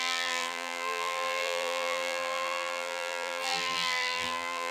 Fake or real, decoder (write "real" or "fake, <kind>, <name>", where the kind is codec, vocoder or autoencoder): fake, vocoder, BigVGAN v2